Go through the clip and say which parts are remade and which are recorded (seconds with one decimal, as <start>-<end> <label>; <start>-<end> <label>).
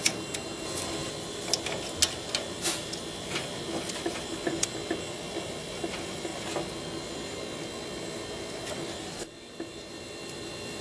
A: 0.0-10.8 recorded